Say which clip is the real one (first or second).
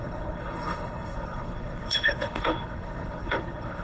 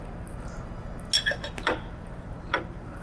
second